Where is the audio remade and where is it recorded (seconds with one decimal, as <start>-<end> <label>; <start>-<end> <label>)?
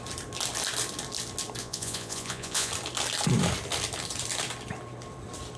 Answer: 0.0-1.6 recorded; 1.6-2.7 remade; 2.7-5.6 recorded